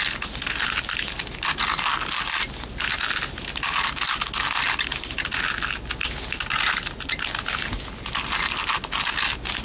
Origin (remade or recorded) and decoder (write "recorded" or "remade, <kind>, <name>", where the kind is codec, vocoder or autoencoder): recorded